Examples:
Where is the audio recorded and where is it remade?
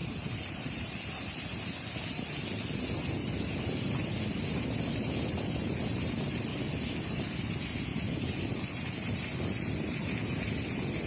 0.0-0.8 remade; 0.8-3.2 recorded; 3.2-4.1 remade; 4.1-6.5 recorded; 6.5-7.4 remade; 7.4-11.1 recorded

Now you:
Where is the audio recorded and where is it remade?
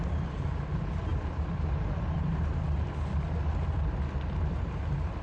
0.0-5.2 recorded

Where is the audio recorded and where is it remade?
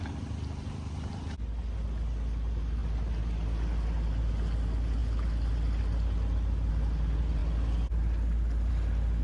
0.0-9.2 recorded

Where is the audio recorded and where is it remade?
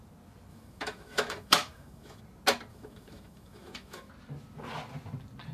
0.0-0.5 recorded; 0.5-2.2 remade; 2.2-2.7 recorded; 2.7-4.1 remade; 4.1-5.5 recorded